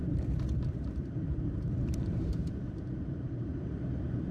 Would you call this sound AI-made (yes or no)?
yes